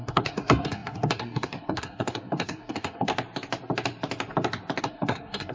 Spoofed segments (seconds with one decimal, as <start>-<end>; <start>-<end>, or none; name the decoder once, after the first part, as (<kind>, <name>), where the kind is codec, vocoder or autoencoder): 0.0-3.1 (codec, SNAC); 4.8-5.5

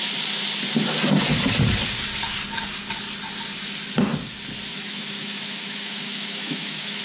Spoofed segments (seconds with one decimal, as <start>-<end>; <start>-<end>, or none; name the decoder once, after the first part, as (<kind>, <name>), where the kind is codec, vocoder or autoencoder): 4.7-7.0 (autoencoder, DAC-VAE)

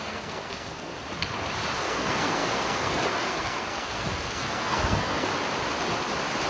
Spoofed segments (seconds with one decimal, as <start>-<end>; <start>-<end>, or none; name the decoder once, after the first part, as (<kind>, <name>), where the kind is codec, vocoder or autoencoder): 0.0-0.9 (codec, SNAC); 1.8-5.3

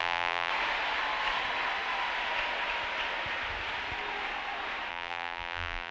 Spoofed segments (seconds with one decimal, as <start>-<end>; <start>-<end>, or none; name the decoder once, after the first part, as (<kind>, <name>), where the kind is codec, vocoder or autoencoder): 0.0-0.5 (vocoder, BigVGAN v2); 4.9-5.9

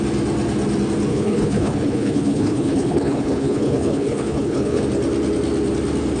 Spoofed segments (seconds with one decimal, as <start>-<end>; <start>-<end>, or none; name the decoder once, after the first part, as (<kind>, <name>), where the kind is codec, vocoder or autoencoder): 1.1-4.8 (codec, HILCodec)

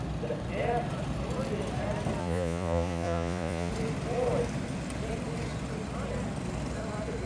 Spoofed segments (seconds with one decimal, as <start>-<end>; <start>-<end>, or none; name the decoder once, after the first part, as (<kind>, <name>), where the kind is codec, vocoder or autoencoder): 2.2-3.7 (vocoder, Vocos)

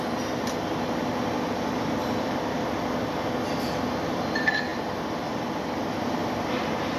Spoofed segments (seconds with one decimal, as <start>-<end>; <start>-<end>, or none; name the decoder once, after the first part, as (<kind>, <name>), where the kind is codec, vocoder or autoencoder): none

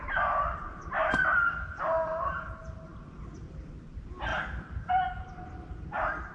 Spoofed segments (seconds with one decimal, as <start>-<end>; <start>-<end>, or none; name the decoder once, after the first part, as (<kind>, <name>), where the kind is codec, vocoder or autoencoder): none